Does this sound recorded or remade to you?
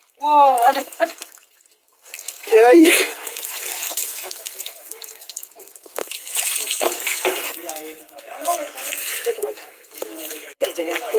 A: remade